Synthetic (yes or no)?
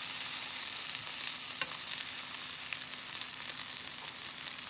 no